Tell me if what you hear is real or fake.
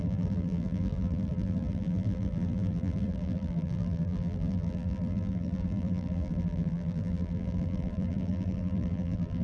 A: fake